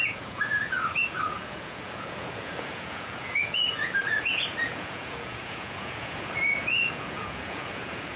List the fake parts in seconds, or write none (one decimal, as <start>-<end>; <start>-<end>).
0.0-8.2